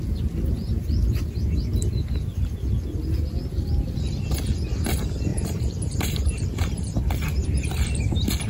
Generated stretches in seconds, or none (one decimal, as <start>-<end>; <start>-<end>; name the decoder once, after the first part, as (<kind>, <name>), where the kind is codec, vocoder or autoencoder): 5.3-7.0 (vocoder, BigVGAN v2)